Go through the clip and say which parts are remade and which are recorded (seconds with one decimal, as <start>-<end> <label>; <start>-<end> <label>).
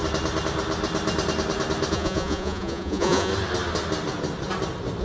0.0-1.9 recorded; 1.9-3.3 remade; 3.3-5.0 recorded